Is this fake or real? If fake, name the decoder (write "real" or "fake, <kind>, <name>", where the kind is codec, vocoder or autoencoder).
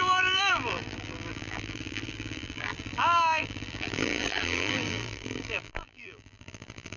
fake, vocoder, BigVGAN v2